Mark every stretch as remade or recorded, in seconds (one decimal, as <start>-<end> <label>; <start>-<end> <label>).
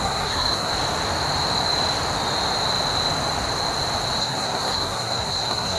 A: 0.0-0.7 remade; 0.7-4.2 recorded; 4.2-5.8 remade